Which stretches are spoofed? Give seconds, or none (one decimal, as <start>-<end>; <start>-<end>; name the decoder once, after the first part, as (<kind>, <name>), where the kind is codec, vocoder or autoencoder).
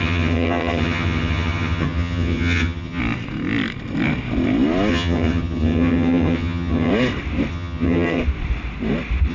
0.0-3.0 (vocoder, HiFi-GAN); 4.9-6.9; 7.5-8.2